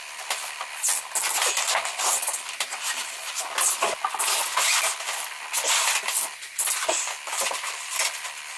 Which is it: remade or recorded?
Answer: recorded